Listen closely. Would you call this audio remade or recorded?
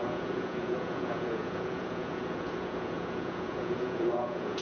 remade